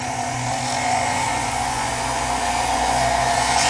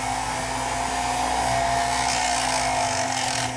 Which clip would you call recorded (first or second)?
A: second